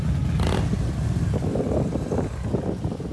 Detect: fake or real real